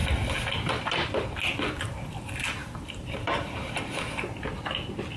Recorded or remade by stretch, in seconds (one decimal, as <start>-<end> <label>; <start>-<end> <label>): 0.0-2.6 recorded; 2.6-3.8 remade; 3.8-5.2 recorded